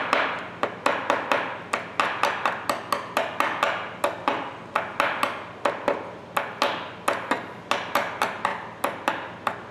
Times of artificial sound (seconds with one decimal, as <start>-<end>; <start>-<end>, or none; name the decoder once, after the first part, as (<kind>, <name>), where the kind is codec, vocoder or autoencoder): none